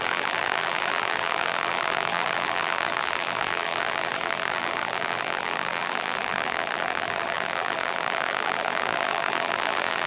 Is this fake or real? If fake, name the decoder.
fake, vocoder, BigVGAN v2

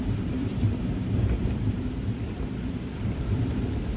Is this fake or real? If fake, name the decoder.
fake, vocoder, BigVGAN v2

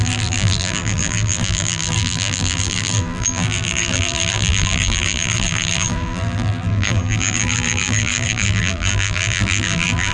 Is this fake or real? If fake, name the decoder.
fake, vocoder, BigVGAN v2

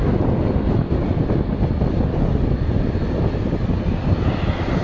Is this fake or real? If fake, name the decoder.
real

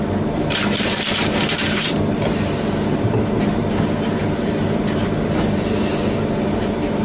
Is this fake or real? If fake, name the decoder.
fake, vocoder, BigVGAN v2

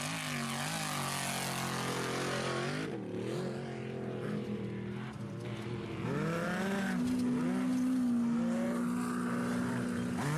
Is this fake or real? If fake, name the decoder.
real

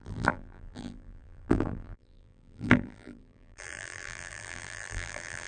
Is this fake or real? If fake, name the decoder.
fake, vocoder, BigVGAN v2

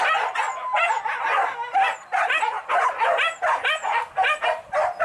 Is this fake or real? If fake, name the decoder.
real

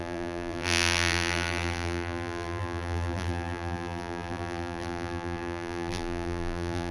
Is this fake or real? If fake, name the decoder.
fake, vocoder, BigVGAN v2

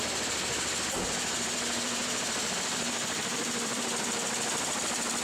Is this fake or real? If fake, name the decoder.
fake, vocoder, BigVGAN v2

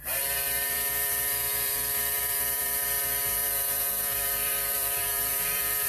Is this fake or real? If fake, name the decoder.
fake, vocoder, BigVGAN v2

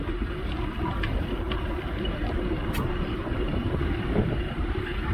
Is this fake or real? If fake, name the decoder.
fake, vocoder, BigVGAN v2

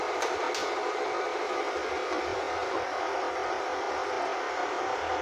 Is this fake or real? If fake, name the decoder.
fake, vocoder, BigVGAN v2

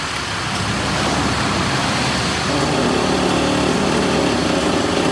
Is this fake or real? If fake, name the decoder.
real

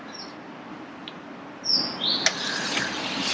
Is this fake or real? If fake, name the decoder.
real